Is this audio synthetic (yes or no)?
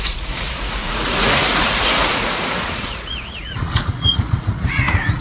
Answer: yes